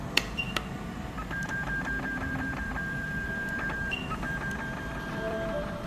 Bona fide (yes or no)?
no